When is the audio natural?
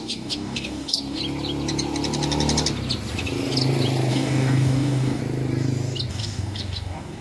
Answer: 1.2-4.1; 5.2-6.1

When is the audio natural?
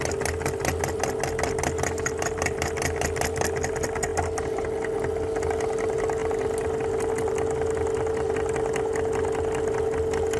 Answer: 0.0-10.4